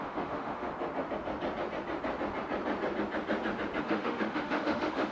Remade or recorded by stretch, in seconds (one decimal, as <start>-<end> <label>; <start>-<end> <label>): 0.0-0.7 remade; 0.7-3.8 recorded; 3.8-5.1 remade